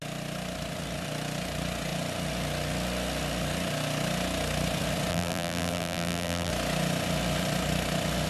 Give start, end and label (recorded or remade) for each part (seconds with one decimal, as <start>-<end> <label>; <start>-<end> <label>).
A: 0.0-5.1 recorded; 5.1-6.5 remade; 6.5-8.3 recorded